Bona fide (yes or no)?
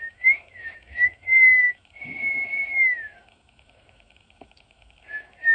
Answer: no